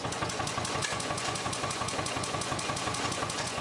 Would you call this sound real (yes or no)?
no